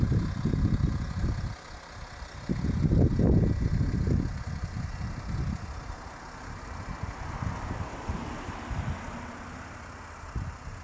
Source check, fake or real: real